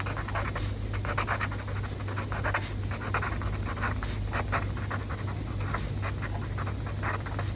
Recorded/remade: recorded